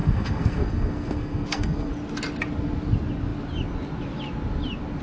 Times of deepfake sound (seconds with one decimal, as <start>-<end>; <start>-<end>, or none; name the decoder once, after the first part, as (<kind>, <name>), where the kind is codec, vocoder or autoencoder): 0.0-1.9 (codec, SNAC)